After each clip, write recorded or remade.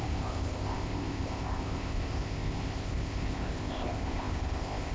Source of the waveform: remade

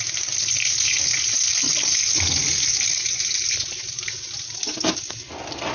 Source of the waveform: recorded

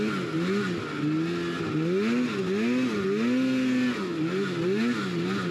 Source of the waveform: recorded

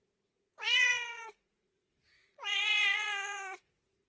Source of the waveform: remade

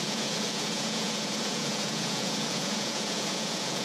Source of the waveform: remade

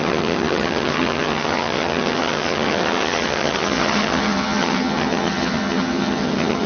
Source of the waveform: remade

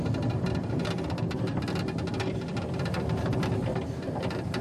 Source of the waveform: recorded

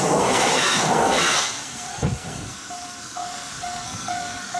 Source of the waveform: remade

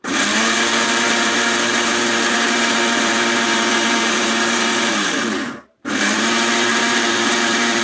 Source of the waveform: remade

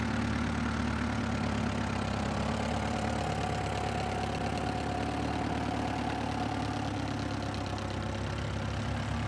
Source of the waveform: recorded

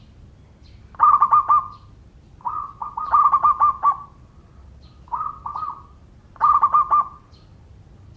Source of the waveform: recorded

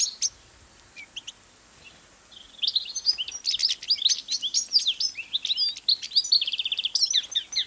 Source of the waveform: recorded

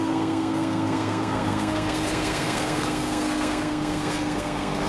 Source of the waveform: remade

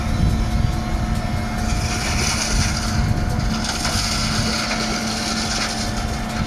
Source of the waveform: recorded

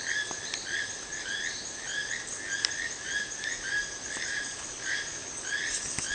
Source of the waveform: recorded